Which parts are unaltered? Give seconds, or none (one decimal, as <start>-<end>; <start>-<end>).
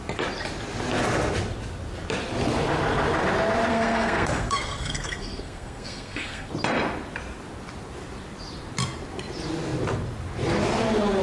0.0-3.7; 6.5-11.2